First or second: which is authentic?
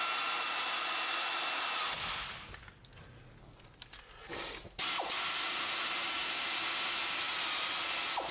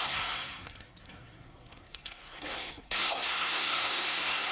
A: first